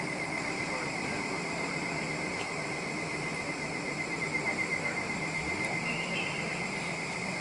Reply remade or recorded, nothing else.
remade